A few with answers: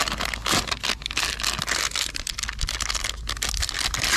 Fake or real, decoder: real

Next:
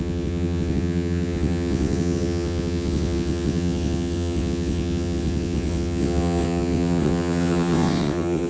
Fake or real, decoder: fake, vocoder, WaveNeXt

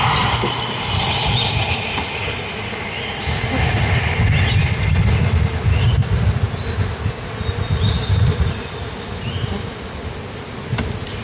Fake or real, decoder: real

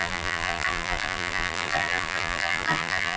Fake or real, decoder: fake, vocoder, BigVGAN v2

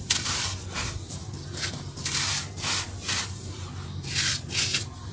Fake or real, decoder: real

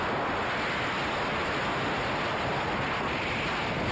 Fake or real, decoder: real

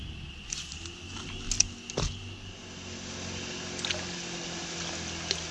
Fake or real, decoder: real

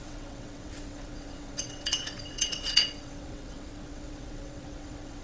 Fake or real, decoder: fake, vocoder, WaveNeXt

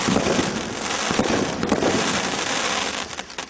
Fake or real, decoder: real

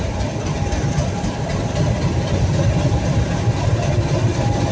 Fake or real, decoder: real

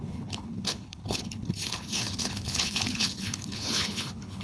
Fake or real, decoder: fake, codec, HILCodec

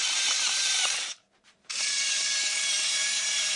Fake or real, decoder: fake, vocoder, BigVGAN v2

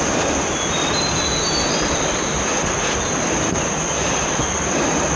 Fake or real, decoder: real